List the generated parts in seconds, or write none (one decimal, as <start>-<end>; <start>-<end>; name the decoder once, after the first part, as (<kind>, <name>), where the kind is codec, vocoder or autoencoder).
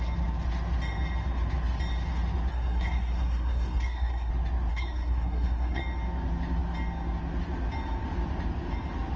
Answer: 2.5-4.3 (codec, SNAC); 4.7-5.8